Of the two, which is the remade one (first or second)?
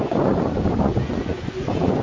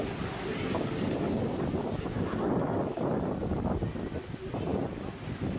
first